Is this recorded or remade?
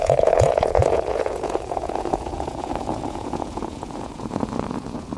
remade